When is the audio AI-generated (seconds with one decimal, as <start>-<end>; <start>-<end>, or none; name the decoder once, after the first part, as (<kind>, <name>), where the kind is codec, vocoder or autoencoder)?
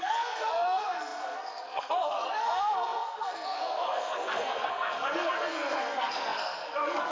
0.0-7.1 (codec, SNAC)